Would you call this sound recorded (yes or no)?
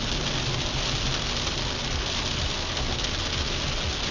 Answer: yes